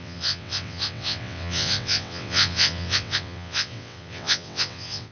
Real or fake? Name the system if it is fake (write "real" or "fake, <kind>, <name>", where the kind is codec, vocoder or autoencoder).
fake, vocoder, WaveNeXt